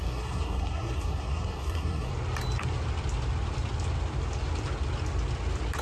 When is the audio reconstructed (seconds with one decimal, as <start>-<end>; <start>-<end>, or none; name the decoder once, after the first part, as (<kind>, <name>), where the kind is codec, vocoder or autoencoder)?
0.0-2.1 (codec, SNAC)

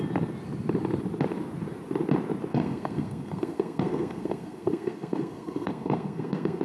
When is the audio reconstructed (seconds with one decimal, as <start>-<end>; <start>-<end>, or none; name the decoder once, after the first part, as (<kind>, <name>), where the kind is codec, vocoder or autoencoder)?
2.5-6.6 (codec, SNAC)

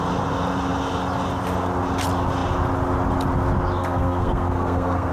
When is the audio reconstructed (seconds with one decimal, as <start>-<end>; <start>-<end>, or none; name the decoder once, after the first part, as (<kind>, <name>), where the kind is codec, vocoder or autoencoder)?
3.8-5.1 (codec, SNAC)

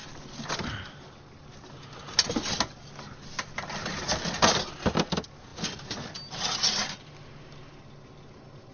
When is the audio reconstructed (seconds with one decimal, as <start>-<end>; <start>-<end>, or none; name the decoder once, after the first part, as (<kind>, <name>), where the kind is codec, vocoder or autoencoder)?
none